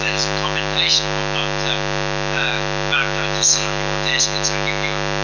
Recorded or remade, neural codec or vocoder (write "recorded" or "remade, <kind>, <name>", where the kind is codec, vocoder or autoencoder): recorded